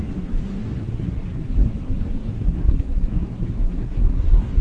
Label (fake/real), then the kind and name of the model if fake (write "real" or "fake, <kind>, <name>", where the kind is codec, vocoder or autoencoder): fake, codec, SNAC